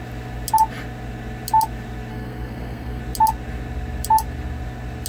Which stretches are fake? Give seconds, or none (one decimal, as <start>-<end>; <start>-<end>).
2.1-3.0